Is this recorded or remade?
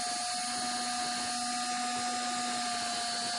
recorded